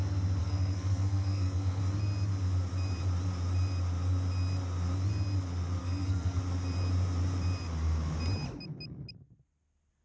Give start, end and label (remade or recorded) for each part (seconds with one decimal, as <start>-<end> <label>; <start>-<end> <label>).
0.0-0.4 recorded; 0.4-1.8 remade; 1.8-5.8 recorded; 5.8-6.4 remade; 6.4-10.0 recorded